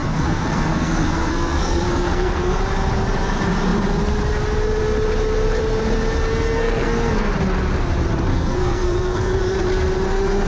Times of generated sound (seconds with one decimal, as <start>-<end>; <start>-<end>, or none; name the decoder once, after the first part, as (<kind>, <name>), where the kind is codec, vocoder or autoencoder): 0.0-2.6 (codec, SNAC); 6.3-7.3; 8.3-9.4